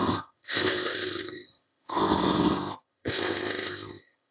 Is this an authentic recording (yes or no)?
no